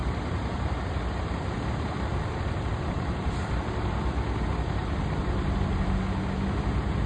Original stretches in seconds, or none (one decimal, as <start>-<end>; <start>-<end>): 4.0-4.8; 6.0-7.1

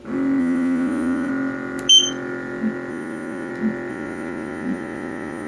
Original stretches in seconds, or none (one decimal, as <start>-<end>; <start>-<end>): 0.0-0.4; 1.3-2.9; 3.5-3.9

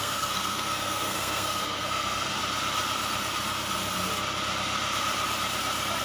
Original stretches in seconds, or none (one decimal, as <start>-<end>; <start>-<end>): 2.4-6.0

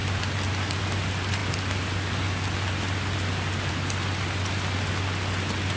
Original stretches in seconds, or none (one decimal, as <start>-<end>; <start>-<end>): 0.0-5.8

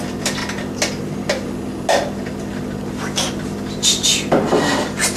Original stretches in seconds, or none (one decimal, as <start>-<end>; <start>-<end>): 0.0-4.1